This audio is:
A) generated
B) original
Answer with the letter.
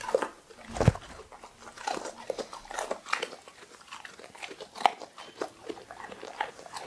B